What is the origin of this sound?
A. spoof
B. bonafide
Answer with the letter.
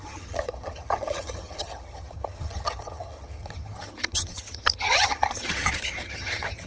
A